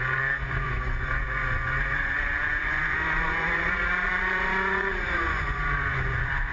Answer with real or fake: fake